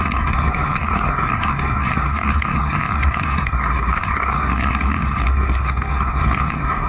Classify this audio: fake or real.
fake